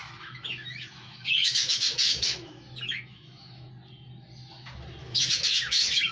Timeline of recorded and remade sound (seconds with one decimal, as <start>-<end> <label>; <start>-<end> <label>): 0.0-3.7 remade; 3.7-5.0 recorded; 5.0-6.1 remade